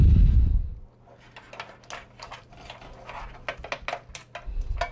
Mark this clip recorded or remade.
recorded